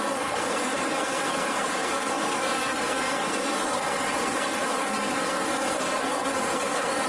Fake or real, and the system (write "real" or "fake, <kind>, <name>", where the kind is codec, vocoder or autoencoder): fake, codec, SNAC